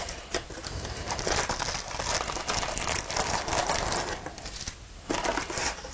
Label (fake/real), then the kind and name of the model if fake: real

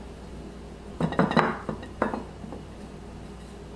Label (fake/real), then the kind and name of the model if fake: real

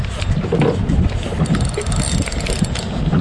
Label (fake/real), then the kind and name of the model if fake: real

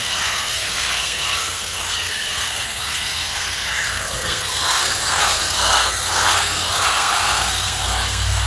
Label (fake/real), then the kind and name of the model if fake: fake, codec, SNAC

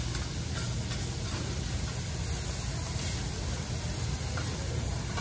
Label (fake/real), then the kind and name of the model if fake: real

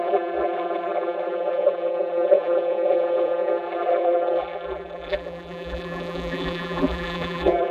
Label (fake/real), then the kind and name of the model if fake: fake, vocoder, BigVGAN v2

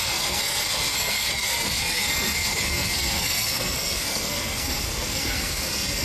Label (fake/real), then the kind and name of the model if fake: fake, codec, SNAC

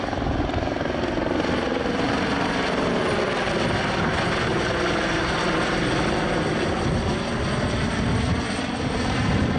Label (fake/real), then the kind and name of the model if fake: real